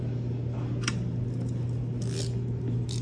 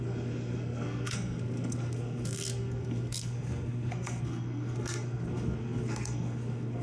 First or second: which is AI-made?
second